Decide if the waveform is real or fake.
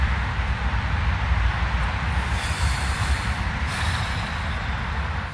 fake